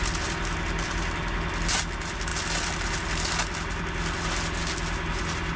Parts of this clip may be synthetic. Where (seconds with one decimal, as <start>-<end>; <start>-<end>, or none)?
none